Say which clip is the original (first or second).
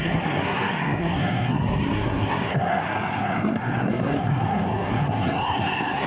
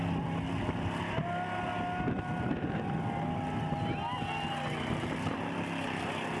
second